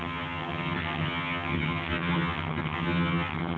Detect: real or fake fake